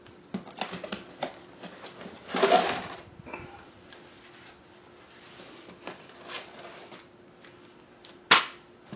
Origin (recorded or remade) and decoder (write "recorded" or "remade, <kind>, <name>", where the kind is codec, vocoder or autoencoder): recorded